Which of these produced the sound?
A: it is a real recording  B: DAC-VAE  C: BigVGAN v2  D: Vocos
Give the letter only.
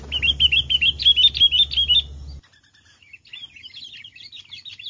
A